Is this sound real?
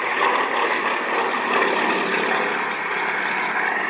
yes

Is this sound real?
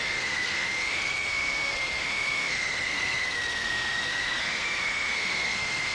no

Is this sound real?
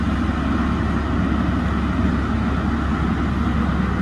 yes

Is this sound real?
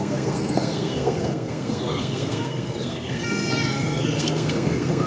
no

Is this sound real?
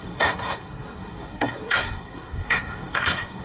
no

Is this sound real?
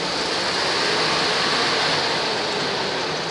yes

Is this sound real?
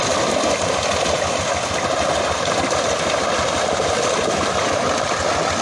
yes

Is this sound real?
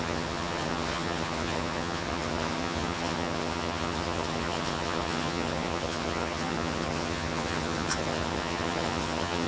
no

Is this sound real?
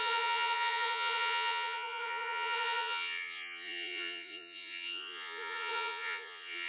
no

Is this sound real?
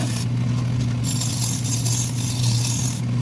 yes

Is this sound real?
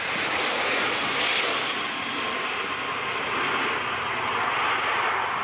yes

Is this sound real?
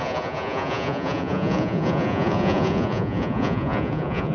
no